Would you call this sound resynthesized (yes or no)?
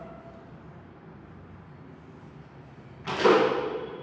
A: no